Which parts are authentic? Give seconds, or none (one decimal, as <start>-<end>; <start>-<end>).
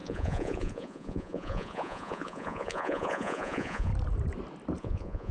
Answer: 3.9-4.8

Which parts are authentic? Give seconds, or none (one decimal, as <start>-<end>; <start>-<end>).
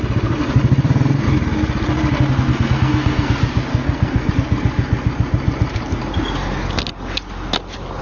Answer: 0.0-2.5; 3.3-3.7; 4.3-8.0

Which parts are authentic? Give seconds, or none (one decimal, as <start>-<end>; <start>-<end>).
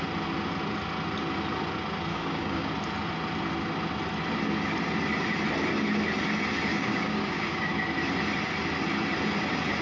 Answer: 0.0-2.1; 2.7-6.7; 7.7-9.8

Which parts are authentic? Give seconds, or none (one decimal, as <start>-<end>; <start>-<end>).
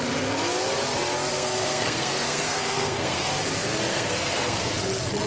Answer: 0.0-1.3; 3.3-3.9; 4.7-5.3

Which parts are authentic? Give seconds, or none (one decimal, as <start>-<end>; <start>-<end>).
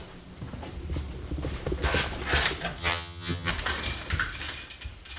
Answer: 0.0-2.8; 3.5-5.2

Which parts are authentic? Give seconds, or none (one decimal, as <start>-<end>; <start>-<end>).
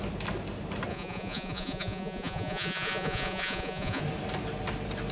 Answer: 0.0-0.9; 4.0-5.1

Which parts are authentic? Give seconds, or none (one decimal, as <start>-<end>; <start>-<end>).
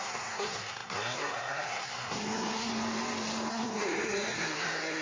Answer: 2.7-3.5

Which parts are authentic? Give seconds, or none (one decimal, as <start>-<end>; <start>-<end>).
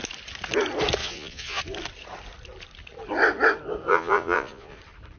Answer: 0.0-1.0; 1.6-3.9; 4.8-5.2